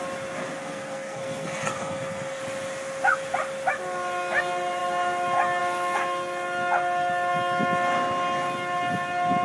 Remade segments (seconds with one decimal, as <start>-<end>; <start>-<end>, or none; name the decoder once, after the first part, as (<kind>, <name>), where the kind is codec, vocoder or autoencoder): 0.6-2.4 (codec, SNAC)

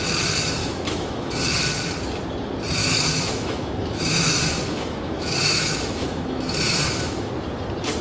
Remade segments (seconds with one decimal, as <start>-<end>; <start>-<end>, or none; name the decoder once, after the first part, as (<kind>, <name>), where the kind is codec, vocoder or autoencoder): 0.6-1.5 (autoencoder, DAC-VAE); 2.8-7.3

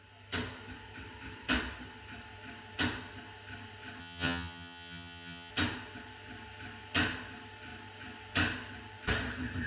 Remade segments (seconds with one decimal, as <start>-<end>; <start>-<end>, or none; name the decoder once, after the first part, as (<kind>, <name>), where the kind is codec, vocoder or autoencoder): 4.0-5.5 (vocoder, HiFi-GAN)

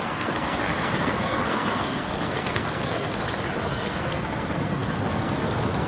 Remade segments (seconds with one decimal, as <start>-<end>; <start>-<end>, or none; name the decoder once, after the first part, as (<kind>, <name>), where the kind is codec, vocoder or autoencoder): 0.0-3.2 (codec, SNAC); 3.7-5.9

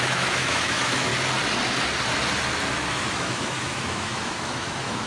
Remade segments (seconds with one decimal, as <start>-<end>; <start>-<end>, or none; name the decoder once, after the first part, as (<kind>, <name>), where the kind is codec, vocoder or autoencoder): 0.0-1.1 (autoencoder, DAC-VAE); 2.9-5.1